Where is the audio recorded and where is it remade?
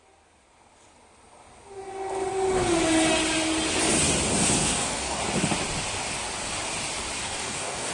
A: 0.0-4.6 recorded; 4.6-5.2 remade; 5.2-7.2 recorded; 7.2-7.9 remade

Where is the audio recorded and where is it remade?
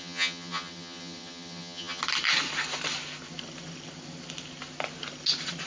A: 0.0-2.0 remade; 2.0-5.7 recorded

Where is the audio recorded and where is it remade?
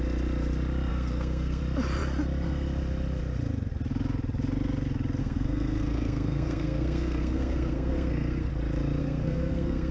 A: 0.0-0.9 recorded; 0.9-1.6 remade; 1.6-5.2 recorded; 5.2-8.5 remade; 8.5-9.0 recorded; 9.0-9.9 remade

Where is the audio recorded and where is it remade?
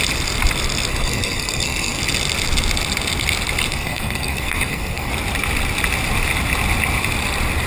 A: 0.0-0.9 recorded; 0.9-2.0 remade; 2.0-3.7 recorded; 3.7-5.1 remade; 5.1-7.7 recorded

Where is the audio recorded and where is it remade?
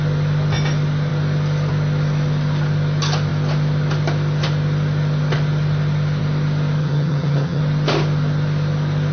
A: 0.0-6.8 recorded; 6.8-7.6 remade; 7.6-9.1 recorded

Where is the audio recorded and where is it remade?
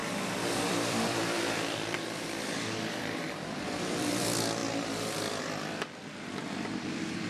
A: 0.0-7.3 remade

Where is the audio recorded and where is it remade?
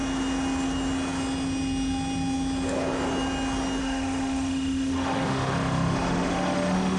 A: 0.0-3.8 recorded; 3.8-7.0 remade